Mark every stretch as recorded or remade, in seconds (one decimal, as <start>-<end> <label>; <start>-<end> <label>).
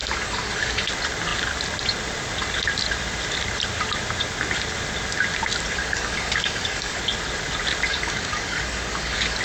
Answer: 0.0-0.9 remade; 0.9-5.8 recorded; 5.8-7.0 remade; 7.0-7.9 recorded; 7.9-9.4 remade